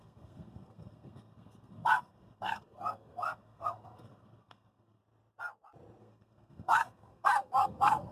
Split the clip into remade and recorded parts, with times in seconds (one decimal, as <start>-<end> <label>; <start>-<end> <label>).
0.0-5.0 remade; 5.0-6.0 recorded; 6.0-8.1 remade